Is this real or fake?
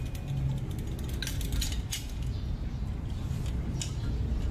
real